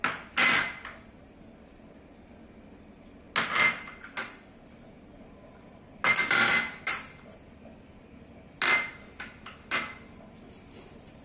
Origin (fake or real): real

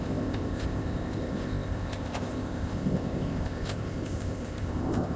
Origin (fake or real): fake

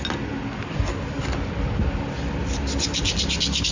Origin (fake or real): real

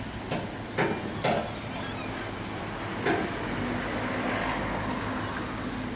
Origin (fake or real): real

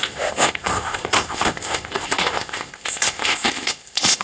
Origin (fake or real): fake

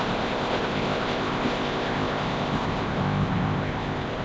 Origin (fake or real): fake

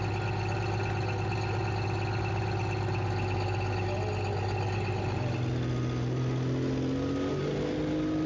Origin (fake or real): real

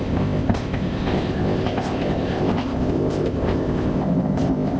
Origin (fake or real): fake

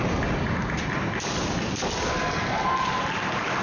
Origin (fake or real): real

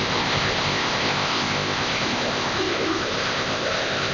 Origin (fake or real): fake